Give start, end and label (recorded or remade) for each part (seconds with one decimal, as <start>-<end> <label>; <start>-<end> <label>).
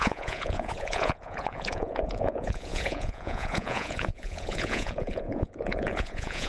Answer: 0.0-6.5 remade